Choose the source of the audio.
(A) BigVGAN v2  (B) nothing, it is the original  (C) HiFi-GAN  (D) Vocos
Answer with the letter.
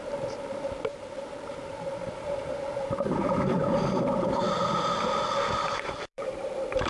A